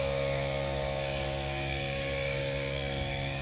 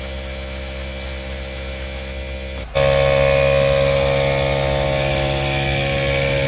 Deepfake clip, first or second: first